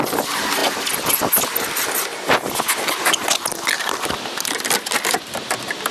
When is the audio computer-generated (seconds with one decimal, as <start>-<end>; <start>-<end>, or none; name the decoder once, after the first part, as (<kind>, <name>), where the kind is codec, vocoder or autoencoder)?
none